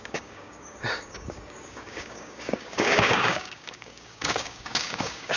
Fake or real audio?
fake